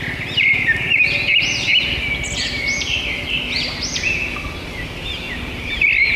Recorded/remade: recorded